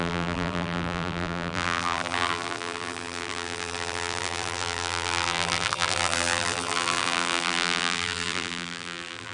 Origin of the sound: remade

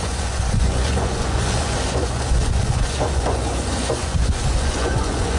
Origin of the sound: remade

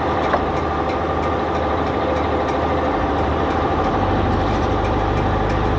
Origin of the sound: remade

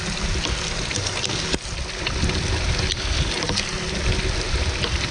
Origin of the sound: recorded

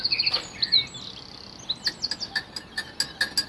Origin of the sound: recorded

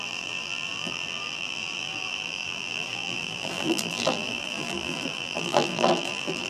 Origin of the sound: remade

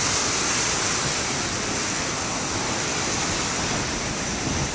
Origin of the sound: recorded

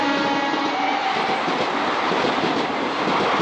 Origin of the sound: recorded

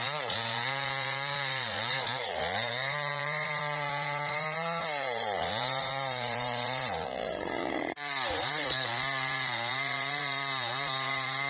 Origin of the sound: remade